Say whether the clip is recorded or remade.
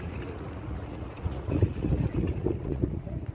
remade